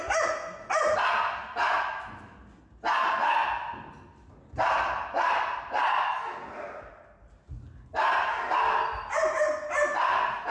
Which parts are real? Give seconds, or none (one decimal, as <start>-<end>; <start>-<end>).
0.0-10.5